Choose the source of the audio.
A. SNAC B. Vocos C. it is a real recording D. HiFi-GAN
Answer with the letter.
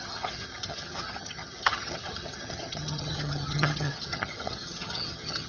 D